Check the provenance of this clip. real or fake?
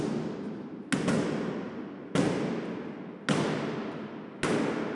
real